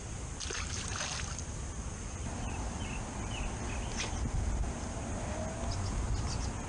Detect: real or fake real